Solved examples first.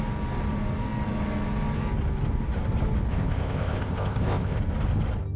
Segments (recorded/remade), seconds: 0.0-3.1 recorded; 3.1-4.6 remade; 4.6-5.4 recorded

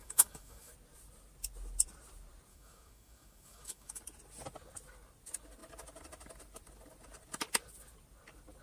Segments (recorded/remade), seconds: 0.0-0.7 remade; 0.7-2.5 recorded; 2.5-4.0 remade; 4.0-8.6 recorded

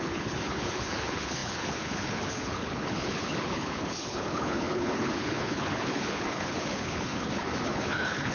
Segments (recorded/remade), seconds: 0.0-8.3 remade

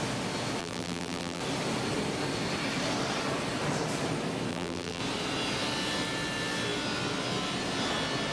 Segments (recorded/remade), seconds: 0.0-0.6 recorded; 0.6-1.4 remade; 1.4-4.5 recorded; 4.5-5.0 remade; 5.0-8.3 recorded